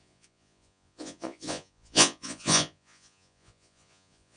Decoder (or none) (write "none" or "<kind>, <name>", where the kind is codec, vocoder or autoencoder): vocoder, Vocos